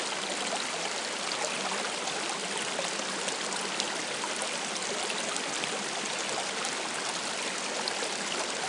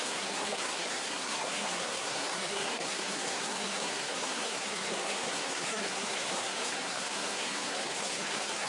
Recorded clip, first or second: first